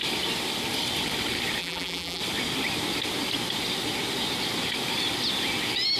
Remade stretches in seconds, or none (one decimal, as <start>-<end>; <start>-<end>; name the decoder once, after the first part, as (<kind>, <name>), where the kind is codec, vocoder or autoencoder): 1.6-2.2 (vocoder, BigVGAN v2)